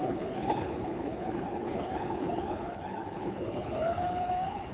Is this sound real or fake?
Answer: fake